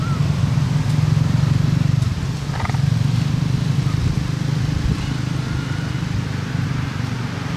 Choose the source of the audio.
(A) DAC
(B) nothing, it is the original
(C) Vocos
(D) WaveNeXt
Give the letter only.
B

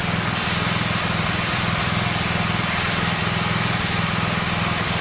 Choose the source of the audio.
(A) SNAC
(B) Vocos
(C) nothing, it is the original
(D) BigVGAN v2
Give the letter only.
C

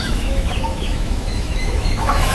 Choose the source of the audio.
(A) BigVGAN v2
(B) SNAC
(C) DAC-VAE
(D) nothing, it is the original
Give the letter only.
C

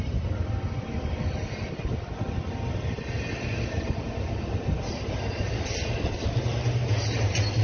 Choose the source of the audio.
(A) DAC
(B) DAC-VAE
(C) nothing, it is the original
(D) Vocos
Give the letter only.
C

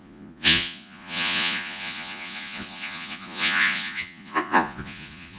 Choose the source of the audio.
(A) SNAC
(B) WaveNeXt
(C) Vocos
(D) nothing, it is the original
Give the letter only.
C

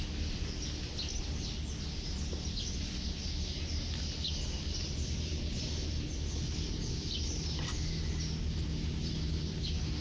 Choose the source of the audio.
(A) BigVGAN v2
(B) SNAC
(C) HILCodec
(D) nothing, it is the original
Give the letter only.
D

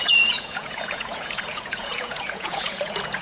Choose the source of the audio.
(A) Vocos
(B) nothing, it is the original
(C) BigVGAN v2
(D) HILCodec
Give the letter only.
A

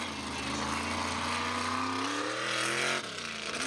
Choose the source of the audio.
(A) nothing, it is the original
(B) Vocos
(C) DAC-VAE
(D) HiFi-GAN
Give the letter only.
A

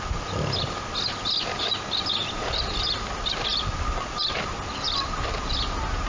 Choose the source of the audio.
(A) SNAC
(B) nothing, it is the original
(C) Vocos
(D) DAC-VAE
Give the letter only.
B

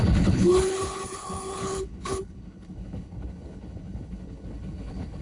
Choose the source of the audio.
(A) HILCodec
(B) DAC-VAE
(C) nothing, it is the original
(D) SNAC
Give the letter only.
A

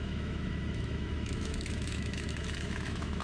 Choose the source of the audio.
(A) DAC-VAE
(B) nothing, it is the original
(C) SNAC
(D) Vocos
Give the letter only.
A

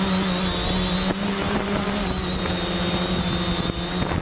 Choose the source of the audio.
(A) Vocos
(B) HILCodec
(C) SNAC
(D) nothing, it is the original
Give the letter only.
D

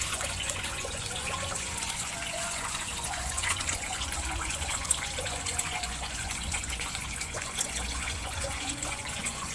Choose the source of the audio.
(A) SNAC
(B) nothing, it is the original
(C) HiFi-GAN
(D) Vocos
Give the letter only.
D